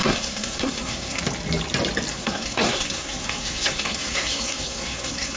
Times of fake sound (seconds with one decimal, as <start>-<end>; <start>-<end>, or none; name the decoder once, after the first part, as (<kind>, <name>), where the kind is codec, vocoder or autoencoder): 0.0-1.2 (codec, SNAC); 2.1-5.4